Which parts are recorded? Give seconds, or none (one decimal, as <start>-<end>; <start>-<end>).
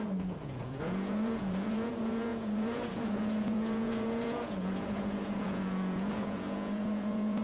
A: none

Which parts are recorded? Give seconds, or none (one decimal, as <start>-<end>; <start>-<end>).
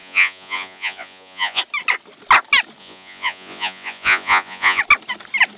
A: 1.6-2.8; 4.8-5.6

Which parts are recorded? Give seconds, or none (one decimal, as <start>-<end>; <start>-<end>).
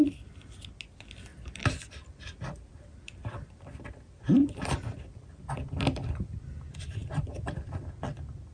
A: 0.0-1.3; 6.4-7.0; 7.9-8.5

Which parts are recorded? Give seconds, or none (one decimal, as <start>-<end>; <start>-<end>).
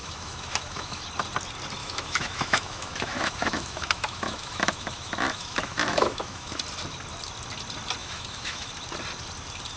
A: 1.0-1.8; 6.6-8.0; 8.7-9.8